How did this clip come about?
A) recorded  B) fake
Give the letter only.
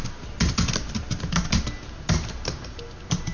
A